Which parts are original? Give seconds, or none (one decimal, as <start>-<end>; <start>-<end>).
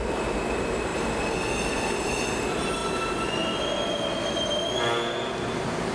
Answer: 0.0-5.9